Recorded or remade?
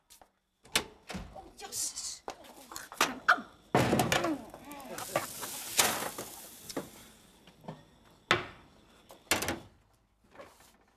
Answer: recorded